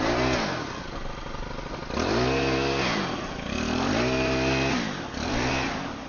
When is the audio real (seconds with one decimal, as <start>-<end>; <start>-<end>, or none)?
0.0-6.1